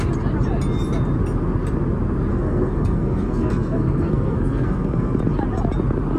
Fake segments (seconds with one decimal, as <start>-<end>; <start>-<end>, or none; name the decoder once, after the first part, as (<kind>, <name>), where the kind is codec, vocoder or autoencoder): 2.3-5.2 (codec, SNAC)